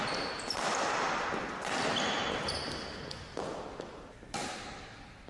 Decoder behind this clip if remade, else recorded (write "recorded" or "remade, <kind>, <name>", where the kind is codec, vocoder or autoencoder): recorded